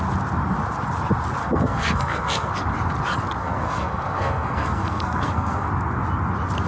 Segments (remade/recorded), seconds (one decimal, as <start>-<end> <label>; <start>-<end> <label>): 0.0-1.4 recorded; 1.4-2.5 remade; 2.5-3.4 recorded; 3.4-5.7 remade; 5.7-6.7 recorded